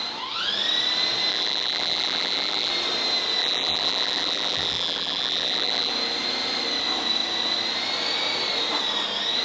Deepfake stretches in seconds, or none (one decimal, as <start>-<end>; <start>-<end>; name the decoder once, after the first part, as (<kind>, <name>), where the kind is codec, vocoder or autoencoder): 1.3-2.7 (vocoder, BigVGAN v2); 3.4-5.9